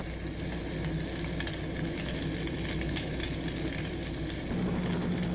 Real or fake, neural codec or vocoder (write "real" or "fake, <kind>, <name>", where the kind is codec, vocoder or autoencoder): real